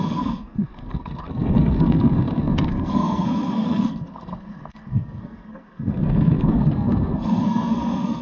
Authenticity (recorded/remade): remade